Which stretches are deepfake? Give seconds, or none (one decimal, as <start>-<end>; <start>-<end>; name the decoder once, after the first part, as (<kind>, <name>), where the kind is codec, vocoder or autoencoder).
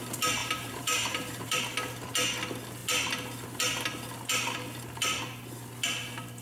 0.4-1.6 (vocoder, BigVGAN v2)